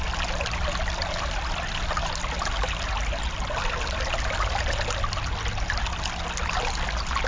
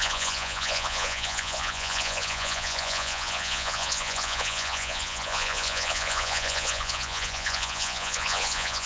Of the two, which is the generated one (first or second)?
second